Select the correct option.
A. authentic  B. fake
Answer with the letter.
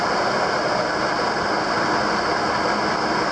A